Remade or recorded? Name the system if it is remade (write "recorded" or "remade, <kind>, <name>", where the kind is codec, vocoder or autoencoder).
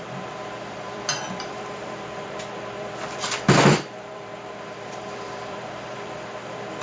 remade, vocoder, BigVGAN v2